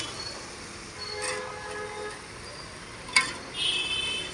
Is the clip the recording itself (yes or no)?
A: yes